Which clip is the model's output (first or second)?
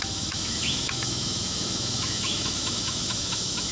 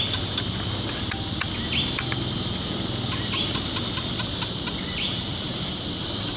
first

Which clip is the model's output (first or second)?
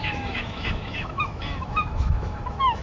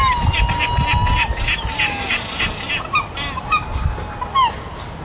first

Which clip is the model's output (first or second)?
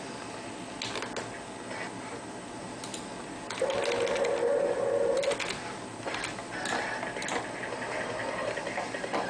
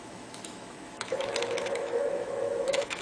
second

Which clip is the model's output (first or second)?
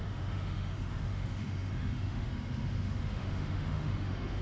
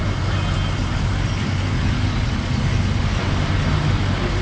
first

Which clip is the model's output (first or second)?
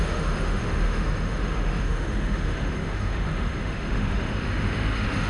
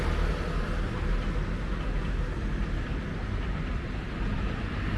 first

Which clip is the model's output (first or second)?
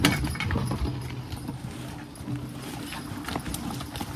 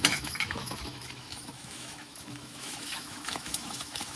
second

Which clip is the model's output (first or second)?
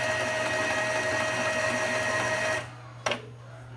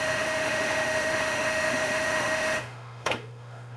second